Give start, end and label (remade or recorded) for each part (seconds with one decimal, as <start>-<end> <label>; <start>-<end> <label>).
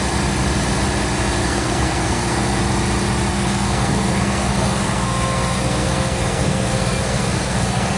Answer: 0.0-1.4 recorded; 1.4-2.6 remade; 2.6-3.3 recorded; 3.3-8.0 remade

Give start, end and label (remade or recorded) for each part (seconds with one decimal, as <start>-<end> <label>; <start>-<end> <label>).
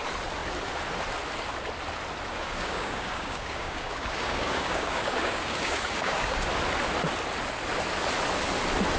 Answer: 0.0-2.3 recorded; 2.3-6.5 remade; 6.5-9.0 recorded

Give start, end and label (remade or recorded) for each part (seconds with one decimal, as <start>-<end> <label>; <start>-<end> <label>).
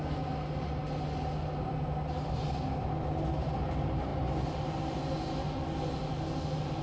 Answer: 0.0-6.8 recorded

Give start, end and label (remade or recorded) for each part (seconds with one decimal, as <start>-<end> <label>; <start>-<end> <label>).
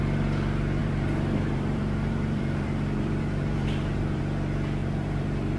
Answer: 0.0-0.8 recorded; 0.8-4.2 remade; 4.2-4.8 recorded; 4.8-5.6 remade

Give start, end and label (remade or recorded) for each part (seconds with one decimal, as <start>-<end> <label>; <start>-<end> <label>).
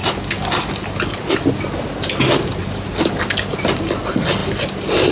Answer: 0.0-5.1 recorded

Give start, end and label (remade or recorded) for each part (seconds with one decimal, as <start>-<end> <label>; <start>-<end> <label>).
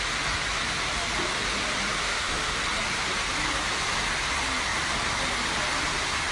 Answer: 0.0-2.0 recorded; 2.0-2.6 remade; 2.6-6.3 recorded